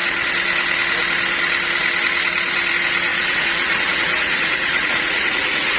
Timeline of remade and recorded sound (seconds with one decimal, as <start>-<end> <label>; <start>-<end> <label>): 0.0-3.1 recorded; 3.1-5.8 remade